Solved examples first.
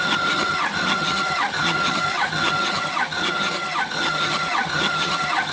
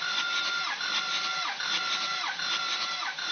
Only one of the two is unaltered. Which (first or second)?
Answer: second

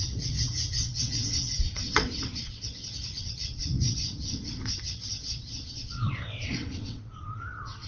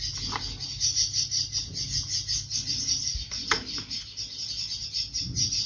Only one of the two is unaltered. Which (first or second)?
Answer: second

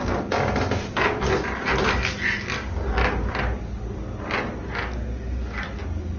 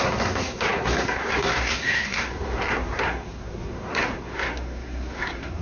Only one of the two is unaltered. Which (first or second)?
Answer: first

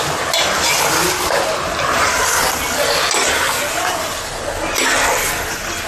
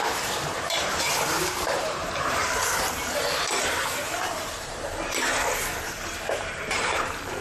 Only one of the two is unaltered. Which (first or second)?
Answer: first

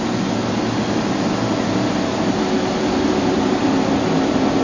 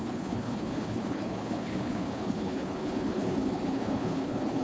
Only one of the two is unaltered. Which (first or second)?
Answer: first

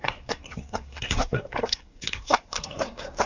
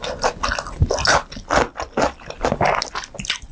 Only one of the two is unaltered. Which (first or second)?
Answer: second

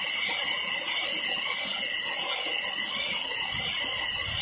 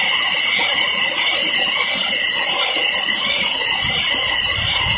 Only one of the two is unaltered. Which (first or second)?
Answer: first